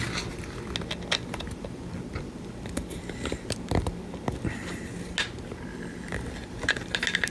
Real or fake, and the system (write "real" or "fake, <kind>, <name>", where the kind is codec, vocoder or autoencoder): real